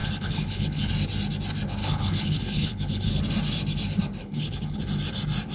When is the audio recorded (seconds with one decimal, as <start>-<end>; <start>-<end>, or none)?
0.9-1.8; 3.2-4.2; 4.8-5.5